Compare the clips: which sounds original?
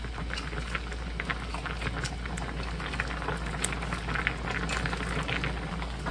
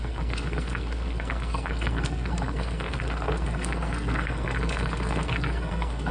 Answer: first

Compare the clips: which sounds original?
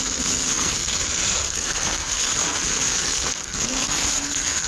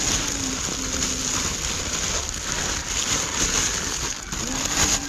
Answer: second